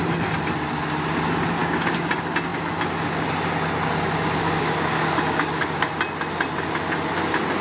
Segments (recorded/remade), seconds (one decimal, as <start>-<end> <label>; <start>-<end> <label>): 0.0-1.6 recorded; 1.6-2.1 remade; 2.1-4.4 recorded; 4.4-5.9 remade; 5.9-7.6 recorded